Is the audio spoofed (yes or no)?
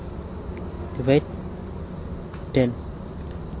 no